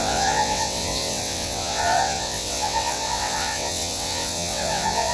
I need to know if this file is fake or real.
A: fake